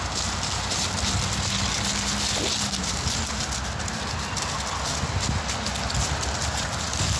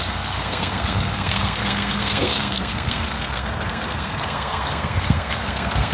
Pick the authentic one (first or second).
first